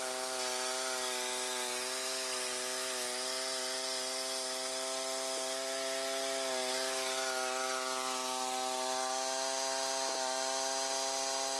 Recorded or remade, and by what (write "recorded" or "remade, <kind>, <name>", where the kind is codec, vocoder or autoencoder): recorded